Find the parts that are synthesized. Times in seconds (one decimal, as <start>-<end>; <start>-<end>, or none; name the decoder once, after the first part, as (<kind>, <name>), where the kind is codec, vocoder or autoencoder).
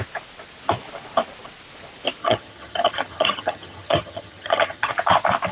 2.2-4.9 (vocoder, HiFi-GAN)